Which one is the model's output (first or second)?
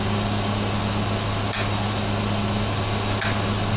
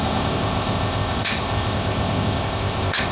second